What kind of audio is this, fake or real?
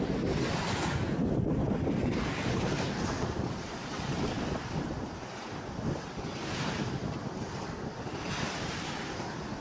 fake